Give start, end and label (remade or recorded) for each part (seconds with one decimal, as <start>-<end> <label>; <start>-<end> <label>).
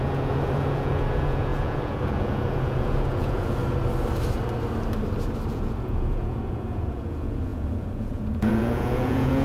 0.0-3.6 remade; 3.6-5.5 recorded; 5.5-9.4 remade